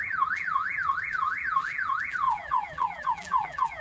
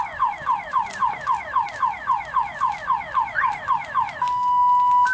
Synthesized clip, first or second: first